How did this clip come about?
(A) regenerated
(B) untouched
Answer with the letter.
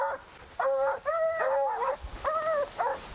B